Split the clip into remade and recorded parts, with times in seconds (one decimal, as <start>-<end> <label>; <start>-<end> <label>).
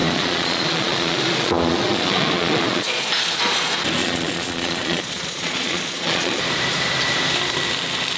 0.0-3.1 remade; 3.1-4.0 recorded; 4.0-6.4 remade; 6.4-8.2 recorded